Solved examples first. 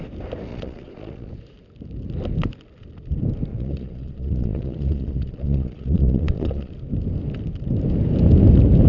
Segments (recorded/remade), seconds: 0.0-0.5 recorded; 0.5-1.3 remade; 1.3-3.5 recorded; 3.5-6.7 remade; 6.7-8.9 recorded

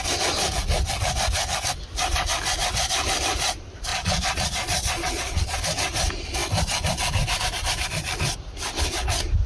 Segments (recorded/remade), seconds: 0.0-3.9 recorded; 3.9-5.6 remade; 5.6-9.5 recorded

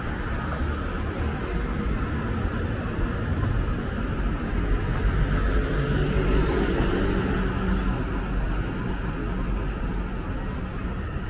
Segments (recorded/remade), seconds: 0.0-3.3 recorded; 3.3-4.0 remade; 4.0-11.3 recorded

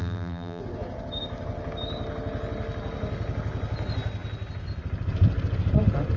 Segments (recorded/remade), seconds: 0.0-0.6 remade; 0.6-6.2 recorded

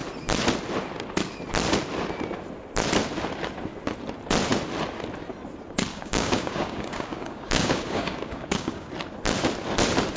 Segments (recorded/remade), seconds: 0.0-5.9 recorded; 5.9-8.9 remade; 8.9-10.2 recorded